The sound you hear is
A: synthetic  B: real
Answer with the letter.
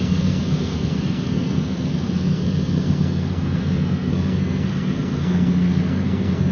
A